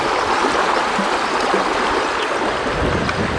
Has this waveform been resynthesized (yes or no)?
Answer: no